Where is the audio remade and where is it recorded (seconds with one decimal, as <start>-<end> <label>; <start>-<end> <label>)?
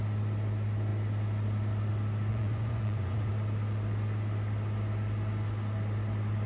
0.0-2.3 recorded; 2.3-3.3 remade; 3.3-6.5 recorded